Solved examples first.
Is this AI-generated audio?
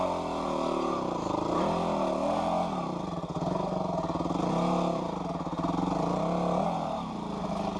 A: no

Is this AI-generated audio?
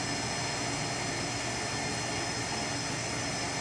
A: no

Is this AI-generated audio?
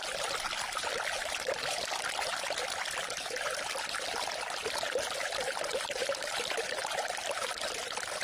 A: no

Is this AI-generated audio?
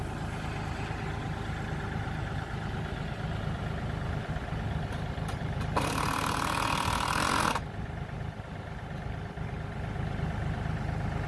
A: no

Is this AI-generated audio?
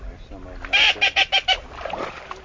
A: no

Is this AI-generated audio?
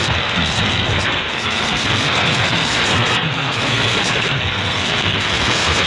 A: yes